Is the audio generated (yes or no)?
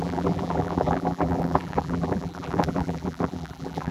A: yes